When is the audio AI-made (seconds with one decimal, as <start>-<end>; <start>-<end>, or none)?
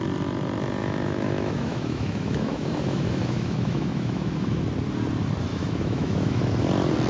0.8-4.6; 5.5-6.4